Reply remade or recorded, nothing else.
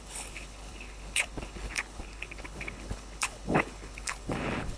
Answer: remade